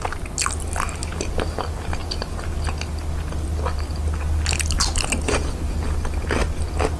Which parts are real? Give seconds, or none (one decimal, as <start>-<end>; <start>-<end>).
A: 0.0-7.0